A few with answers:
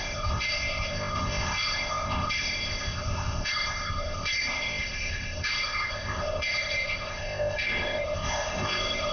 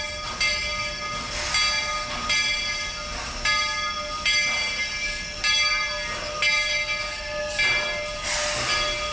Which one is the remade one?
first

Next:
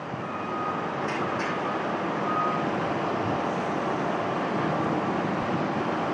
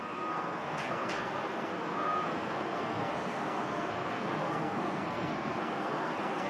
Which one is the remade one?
second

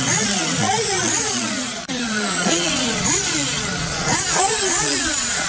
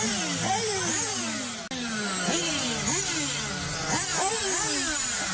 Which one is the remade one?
first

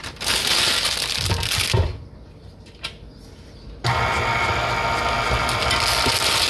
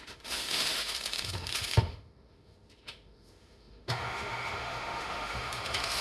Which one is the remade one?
second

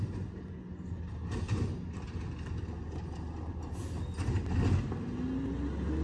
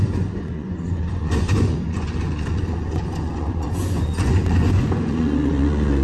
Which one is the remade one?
second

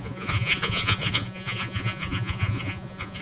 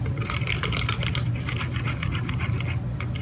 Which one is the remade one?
first